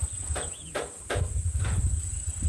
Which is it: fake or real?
fake